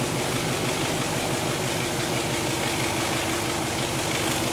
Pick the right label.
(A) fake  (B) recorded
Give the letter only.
B